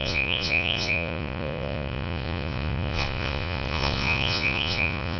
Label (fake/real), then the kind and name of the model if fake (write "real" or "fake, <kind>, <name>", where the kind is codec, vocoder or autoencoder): fake, vocoder, Vocos